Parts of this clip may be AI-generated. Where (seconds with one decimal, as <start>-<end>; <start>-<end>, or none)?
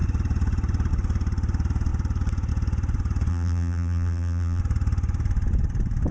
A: 3.3-4.6